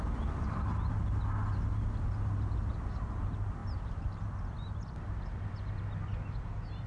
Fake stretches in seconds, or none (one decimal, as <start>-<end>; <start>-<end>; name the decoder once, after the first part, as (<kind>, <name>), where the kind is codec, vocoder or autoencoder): none